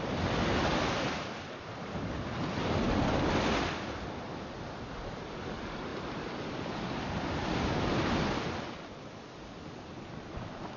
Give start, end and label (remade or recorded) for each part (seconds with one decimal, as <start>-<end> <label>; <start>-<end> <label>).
0.0-10.8 recorded